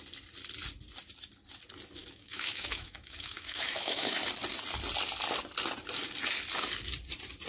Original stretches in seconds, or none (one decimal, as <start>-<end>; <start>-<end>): 0.0-2.0; 4.2-7.5